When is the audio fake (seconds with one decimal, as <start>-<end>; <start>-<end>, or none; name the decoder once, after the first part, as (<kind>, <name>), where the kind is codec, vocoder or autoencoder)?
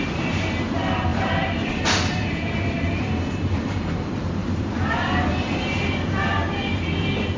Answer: 1.1-3.6 (vocoder, BigVGAN v2); 4.4-6.2